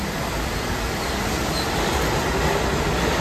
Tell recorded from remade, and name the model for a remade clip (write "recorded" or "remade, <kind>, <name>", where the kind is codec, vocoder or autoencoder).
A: recorded